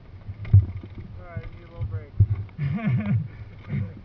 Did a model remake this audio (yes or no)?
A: no